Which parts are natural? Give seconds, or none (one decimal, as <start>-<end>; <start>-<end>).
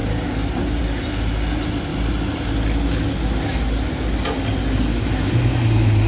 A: 0.0-6.1